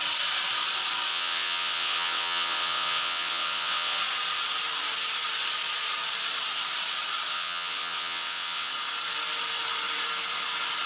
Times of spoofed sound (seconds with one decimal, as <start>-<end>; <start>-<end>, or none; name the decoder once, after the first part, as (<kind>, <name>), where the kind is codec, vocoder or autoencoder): 1.1-4.0 (vocoder, WaveNeXt); 7.3-8.7